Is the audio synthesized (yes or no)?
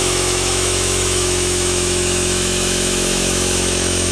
yes